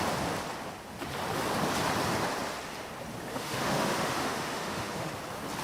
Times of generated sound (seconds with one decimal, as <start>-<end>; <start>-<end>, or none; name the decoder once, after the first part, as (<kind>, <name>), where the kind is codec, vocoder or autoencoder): 3.3-5.1 (autoencoder, DAC-VAE)